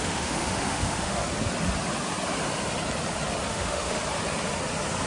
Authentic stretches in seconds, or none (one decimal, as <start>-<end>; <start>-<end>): 1.2-3.5; 4.0-5.1